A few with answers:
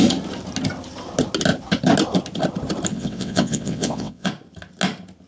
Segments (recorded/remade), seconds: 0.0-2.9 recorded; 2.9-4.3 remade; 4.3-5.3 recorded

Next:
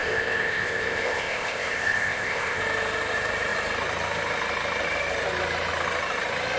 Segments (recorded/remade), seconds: 0.0-2.6 remade; 2.6-6.6 recorded

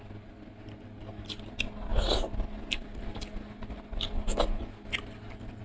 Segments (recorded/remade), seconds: 0.0-5.6 recorded

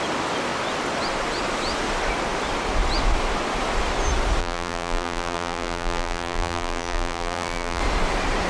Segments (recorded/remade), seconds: 0.0-4.4 recorded; 4.4-7.8 remade; 7.8-8.5 recorded

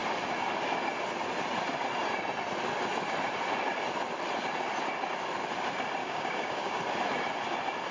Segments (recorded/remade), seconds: 0.0-6.0 recorded; 6.0-6.8 remade; 6.8-7.9 recorded

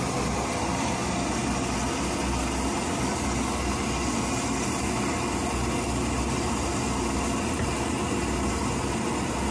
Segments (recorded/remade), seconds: 0.0-9.5 recorded

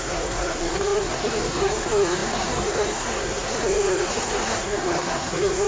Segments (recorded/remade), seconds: 0.0-5.7 remade